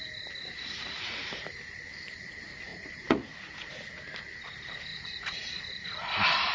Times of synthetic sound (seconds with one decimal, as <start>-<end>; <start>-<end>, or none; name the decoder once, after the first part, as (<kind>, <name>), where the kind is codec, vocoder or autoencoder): 2.7-3.7 (vocoder, Vocos); 4.9-5.6